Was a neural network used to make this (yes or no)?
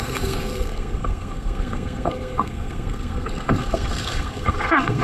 yes